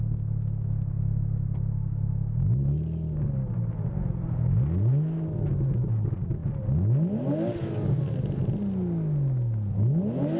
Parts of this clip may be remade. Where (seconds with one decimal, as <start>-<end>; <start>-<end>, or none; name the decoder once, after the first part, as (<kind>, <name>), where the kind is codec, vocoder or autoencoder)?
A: none